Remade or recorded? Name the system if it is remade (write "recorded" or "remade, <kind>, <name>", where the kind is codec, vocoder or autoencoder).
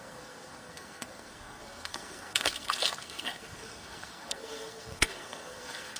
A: remade, codec, SNAC